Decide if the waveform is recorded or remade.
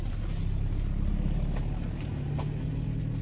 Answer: recorded